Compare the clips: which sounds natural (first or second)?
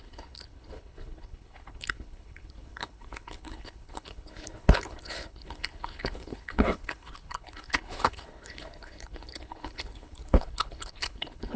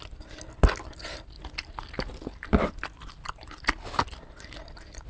second